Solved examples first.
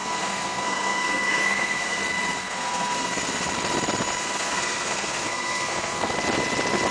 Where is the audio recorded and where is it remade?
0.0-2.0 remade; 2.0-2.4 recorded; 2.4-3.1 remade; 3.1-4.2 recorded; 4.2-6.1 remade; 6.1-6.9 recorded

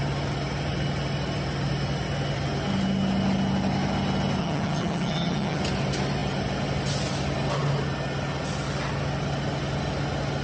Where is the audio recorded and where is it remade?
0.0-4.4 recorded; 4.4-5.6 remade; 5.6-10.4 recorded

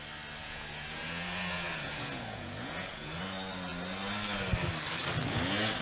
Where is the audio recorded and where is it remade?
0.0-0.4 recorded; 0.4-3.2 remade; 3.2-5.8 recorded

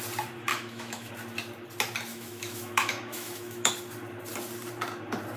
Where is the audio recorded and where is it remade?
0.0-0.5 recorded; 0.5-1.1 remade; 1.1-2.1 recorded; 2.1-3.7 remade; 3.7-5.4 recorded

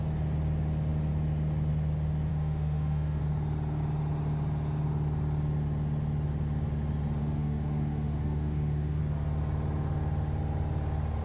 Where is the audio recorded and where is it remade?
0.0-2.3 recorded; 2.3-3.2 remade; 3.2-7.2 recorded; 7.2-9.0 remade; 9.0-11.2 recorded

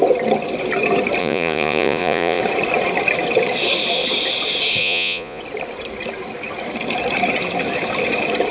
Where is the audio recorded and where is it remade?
0.0-1.2 recorded; 1.2-2.4 remade; 2.4-4.8 recorded; 4.8-5.4 remade; 5.4-8.5 recorded

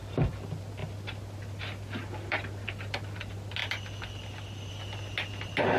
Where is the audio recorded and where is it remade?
0.0-5.8 recorded